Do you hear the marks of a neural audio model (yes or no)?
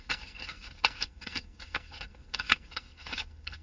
yes